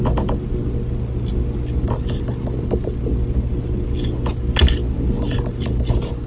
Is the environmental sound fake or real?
real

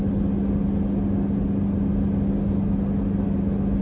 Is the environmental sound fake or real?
real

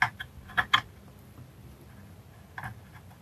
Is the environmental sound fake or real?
real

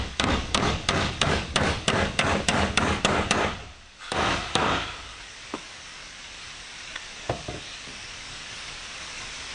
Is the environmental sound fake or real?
fake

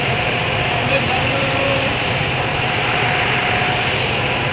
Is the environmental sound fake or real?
fake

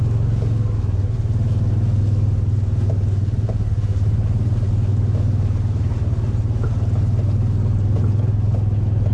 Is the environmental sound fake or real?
real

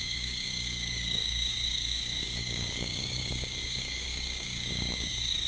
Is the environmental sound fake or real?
fake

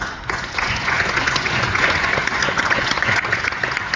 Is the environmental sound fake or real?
fake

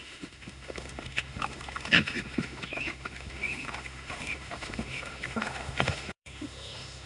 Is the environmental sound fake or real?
fake